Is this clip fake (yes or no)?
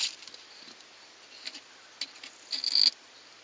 no